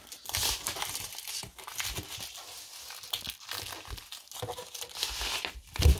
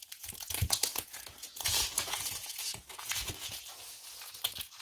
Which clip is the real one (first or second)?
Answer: first